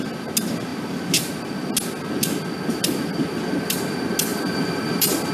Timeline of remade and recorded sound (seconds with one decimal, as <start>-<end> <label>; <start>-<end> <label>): 0.0-4.3 recorded; 4.3-5.3 remade